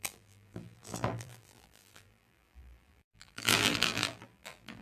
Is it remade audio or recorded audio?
remade